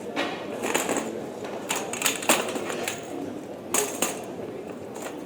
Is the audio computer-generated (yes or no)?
no